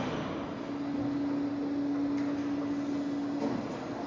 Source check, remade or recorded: recorded